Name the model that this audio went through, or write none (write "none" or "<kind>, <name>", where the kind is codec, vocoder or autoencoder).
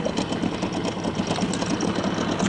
none